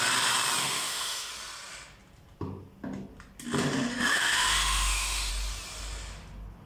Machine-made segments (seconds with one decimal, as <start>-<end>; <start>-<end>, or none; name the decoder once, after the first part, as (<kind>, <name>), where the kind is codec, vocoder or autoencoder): 0.6-1.3 (autoencoder, DAC-VAE); 3.9-5.3